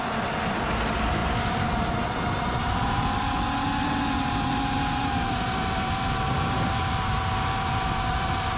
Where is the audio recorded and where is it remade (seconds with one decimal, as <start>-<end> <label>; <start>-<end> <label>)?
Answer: 0.0-8.6 recorded